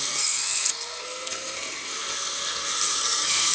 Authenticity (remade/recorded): remade